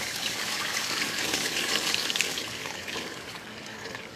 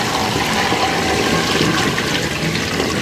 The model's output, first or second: first